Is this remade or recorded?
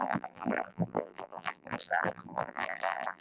remade